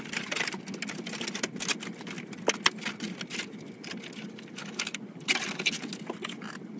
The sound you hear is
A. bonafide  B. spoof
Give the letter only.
A